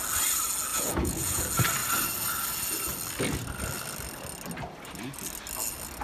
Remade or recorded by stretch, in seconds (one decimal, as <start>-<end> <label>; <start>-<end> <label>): 0.0-0.7 recorded; 0.7-1.4 remade; 1.4-6.0 recorded